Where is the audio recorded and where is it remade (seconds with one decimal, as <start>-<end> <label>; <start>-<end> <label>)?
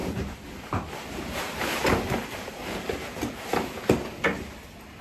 0.0-5.0 recorded